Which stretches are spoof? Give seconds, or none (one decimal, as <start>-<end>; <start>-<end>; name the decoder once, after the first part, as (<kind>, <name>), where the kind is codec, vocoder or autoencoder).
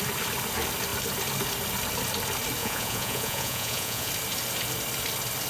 2.6-4.1 (vocoder, Vocos)